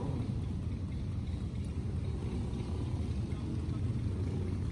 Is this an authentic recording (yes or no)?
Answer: yes